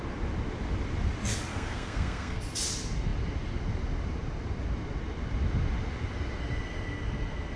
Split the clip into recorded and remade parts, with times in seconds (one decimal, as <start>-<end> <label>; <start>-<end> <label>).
0.0-1.5 recorded; 1.5-2.4 remade; 2.4-7.6 recorded